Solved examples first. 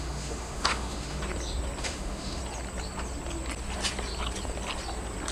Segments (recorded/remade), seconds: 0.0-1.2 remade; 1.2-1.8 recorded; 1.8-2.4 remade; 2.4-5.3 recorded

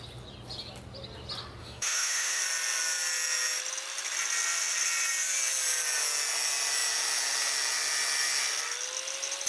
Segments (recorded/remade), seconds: 0.0-1.6 recorded; 1.6-2.4 remade; 2.4-9.5 recorded

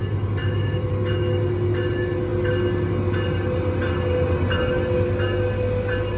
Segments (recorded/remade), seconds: 0.0-0.4 recorded; 0.4-0.9 remade; 0.9-6.2 recorded

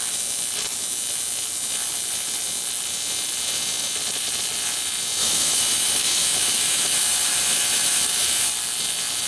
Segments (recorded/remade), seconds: 0.0-5.2 recorded; 5.2-8.5 remade; 8.5-9.3 recorded